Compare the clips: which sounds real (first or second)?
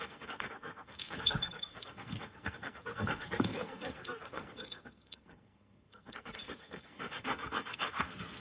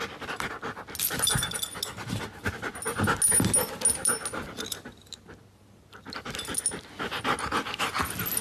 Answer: second